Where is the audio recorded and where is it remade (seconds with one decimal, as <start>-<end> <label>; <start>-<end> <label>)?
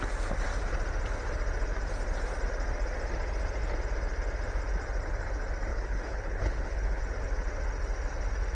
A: 0.0-5.7 recorded; 5.7-7.0 remade; 7.0-8.5 recorded